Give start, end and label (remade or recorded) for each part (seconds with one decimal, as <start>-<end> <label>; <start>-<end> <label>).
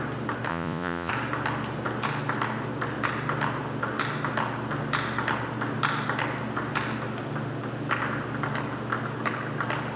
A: 0.0-0.5 recorded; 0.5-1.1 remade; 1.1-10.0 recorded